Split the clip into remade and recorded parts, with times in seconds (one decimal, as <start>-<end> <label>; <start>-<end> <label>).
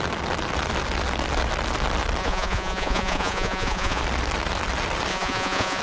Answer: 0.0-2.2 recorded; 2.2-4.0 remade; 4.0-5.1 recorded; 5.1-5.8 remade